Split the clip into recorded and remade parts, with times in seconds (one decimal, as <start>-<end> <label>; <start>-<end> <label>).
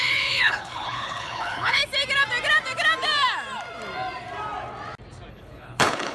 0.0-1.8 remade; 1.8-5.3 recorded; 5.3-6.1 remade